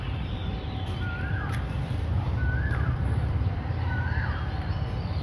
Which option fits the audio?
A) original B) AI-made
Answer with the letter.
B